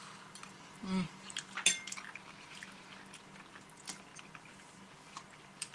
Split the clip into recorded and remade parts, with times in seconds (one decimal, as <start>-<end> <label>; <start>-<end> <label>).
0.0-5.7 recorded